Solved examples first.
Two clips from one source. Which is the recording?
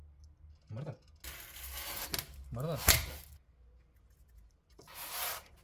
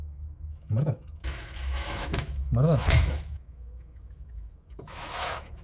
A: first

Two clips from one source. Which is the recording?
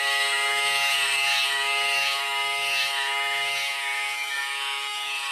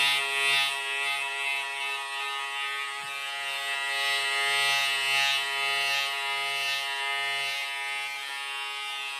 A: second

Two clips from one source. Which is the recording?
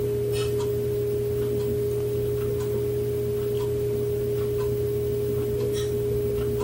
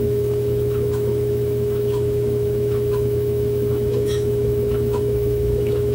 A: first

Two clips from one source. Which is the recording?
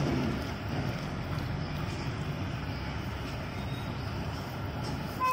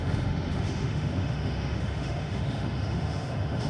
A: first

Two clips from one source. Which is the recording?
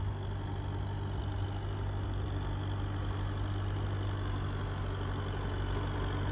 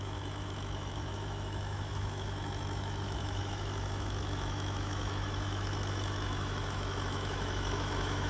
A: first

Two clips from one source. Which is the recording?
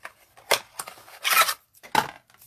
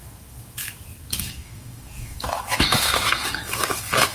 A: first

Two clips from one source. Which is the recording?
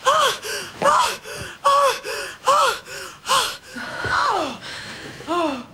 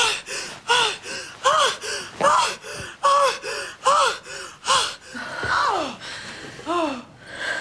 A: second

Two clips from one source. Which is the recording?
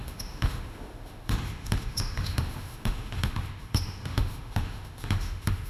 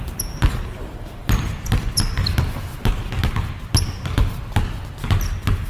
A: second